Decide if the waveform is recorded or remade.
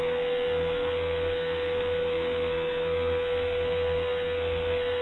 remade